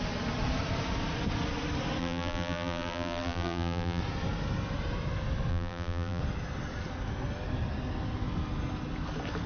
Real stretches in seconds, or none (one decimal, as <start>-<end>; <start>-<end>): 0.0-2.0; 4.0-5.5; 6.2-9.5